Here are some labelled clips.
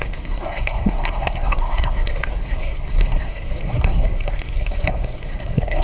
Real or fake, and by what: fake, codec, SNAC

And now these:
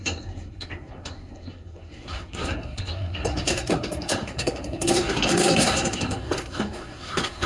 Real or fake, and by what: fake, codec, SNAC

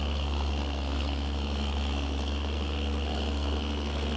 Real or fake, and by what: fake, codec, SNAC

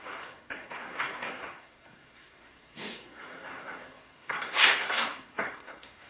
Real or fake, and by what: fake, codec, SNAC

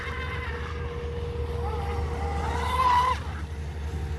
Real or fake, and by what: real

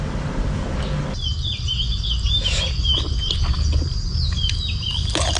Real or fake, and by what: real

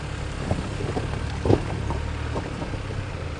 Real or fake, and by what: real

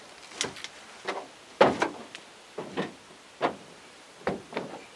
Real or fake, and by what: real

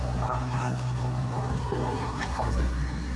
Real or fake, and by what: fake, codec, SNAC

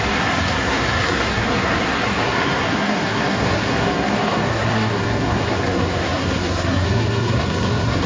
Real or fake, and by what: fake, codec, SNAC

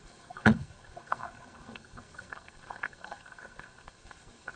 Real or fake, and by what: fake, codec, SNAC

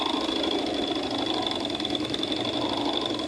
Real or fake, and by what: real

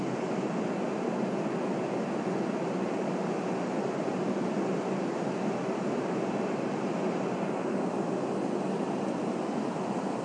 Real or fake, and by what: real